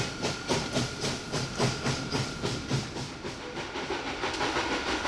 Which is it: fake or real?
real